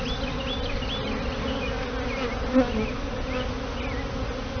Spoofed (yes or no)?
no